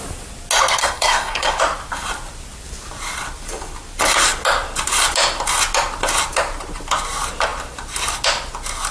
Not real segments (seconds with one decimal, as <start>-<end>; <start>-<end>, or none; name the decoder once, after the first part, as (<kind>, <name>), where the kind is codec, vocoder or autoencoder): 0.8-1.6 (codec, SNAC)